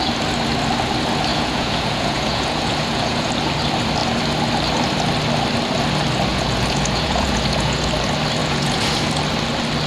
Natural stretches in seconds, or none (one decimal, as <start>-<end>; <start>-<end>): 0.0-1.3; 3.3-6.3; 7.9-8.4; 9.1-9.9